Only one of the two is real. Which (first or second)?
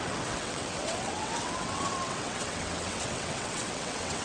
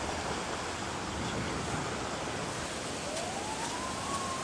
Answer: second